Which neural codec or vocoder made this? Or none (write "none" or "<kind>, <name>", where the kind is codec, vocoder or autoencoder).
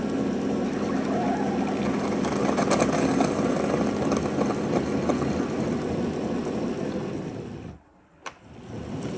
none